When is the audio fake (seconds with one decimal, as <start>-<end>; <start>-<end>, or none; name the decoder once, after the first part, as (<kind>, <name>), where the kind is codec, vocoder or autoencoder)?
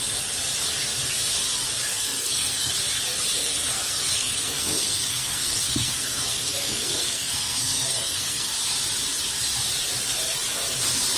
1.9-2.7 (codec, SNAC); 3.4-8.5